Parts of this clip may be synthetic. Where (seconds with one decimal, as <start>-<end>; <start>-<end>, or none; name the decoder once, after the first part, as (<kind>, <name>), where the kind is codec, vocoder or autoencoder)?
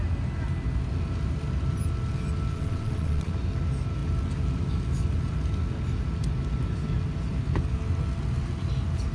2.5-3.3 (vocoder, WaveNeXt)